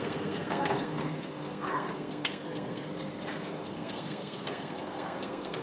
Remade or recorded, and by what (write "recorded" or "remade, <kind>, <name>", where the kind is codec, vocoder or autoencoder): remade, codec, SNAC